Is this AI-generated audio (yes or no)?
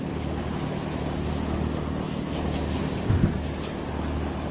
no